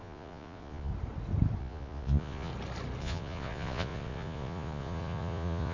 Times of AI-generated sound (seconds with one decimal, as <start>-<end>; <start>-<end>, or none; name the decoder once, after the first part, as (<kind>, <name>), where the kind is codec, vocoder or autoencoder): 0.0-0.9 (vocoder, Vocos); 1.6-2.5; 3.0-5.7